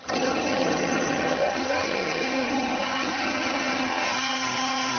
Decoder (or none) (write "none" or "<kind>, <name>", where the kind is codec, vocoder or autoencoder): vocoder, HiFi-GAN